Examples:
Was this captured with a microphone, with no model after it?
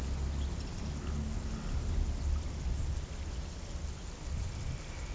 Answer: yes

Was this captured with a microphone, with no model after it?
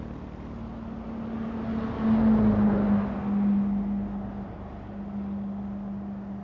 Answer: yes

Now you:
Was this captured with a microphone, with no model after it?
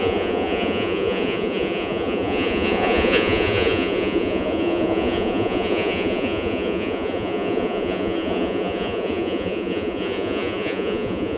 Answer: no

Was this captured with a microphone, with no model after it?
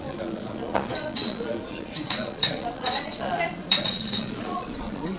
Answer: no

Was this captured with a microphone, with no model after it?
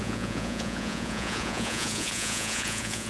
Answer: no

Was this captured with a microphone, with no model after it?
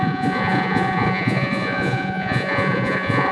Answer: no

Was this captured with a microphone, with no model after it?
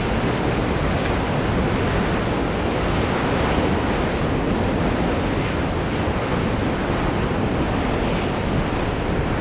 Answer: yes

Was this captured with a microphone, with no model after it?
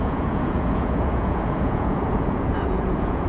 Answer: no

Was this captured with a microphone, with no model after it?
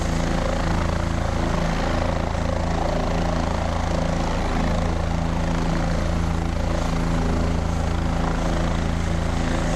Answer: yes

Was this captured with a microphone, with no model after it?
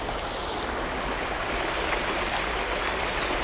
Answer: yes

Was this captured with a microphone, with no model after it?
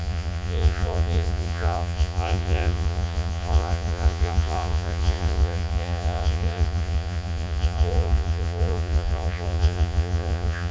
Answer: no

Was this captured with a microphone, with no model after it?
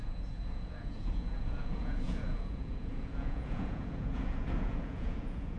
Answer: no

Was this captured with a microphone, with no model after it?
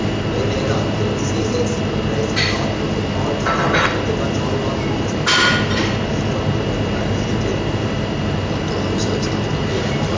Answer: yes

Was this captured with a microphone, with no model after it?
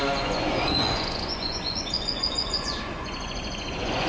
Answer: no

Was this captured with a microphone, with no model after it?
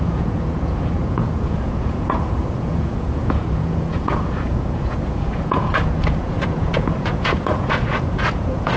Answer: no